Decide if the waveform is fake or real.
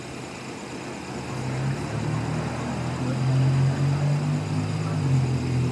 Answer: real